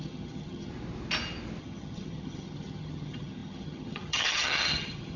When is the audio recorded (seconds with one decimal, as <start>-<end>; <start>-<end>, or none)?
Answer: 0.7-1.6